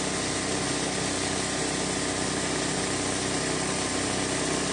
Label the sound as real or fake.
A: real